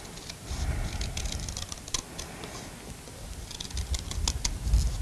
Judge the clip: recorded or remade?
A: recorded